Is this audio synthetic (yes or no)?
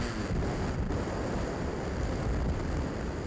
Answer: no